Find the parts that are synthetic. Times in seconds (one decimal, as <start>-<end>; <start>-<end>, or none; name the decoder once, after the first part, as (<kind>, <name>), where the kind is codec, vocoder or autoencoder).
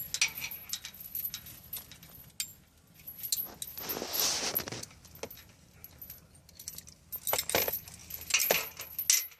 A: none